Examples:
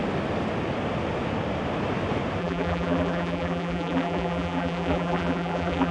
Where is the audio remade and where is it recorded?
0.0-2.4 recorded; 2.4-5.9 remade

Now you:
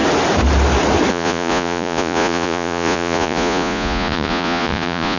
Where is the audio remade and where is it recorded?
0.0-1.1 recorded; 1.1-5.2 remade

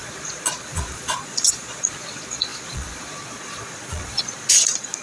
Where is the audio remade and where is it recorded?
0.0-5.0 remade